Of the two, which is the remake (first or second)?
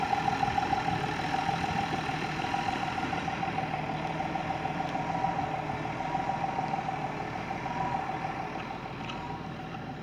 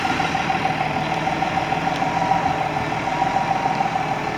first